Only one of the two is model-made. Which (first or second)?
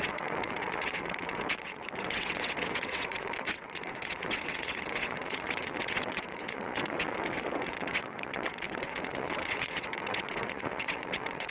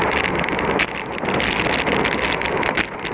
first